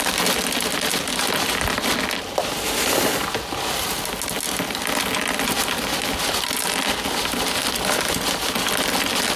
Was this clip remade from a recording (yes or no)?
no